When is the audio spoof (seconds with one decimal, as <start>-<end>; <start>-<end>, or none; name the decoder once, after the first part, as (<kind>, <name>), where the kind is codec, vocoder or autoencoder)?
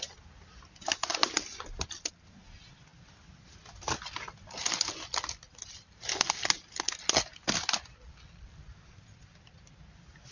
none